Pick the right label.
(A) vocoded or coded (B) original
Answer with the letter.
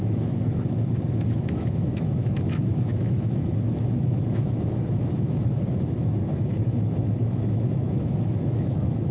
A